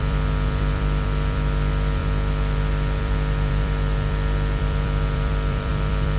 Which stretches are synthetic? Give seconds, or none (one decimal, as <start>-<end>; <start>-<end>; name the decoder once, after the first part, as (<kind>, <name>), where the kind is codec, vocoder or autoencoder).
0.0-6.2 (vocoder, BigVGAN v2)